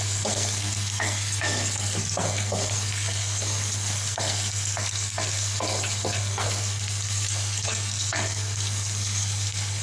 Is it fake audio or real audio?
fake